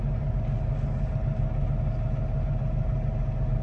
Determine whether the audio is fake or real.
real